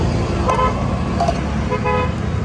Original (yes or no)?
yes